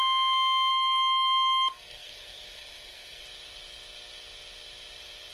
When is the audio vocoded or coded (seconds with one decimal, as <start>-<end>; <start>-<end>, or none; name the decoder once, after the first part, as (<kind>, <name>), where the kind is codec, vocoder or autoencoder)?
0.7-3.2 (codec, SNAC)